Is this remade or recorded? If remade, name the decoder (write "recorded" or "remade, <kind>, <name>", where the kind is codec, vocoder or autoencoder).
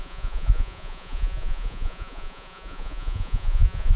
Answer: remade, vocoder, Vocos